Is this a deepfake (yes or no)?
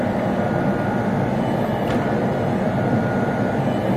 no